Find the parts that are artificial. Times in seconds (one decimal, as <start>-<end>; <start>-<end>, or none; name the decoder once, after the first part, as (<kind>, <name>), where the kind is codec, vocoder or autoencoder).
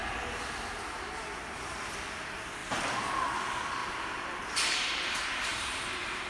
2.6-3.1 (vocoder, BigVGAN v2); 3.8-4.5; 5.5-6.3